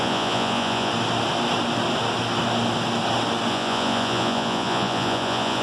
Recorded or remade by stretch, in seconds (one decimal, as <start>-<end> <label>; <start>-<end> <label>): 0.0-0.9 remade; 0.9-3.5 recorded; 3.5-5.6 remade